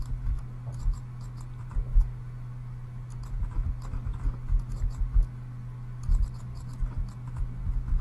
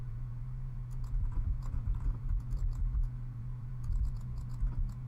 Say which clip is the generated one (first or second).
second